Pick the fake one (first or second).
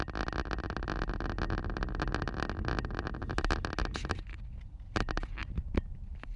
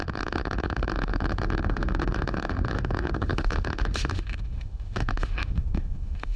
second